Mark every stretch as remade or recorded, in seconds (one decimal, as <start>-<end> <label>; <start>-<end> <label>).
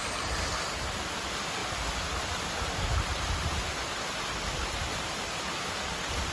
0.0-6.3 recorded